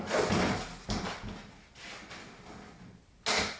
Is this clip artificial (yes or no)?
no